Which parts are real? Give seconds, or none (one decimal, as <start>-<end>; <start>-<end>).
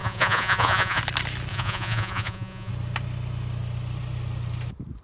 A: 1.0-1.5; 2.7-5.0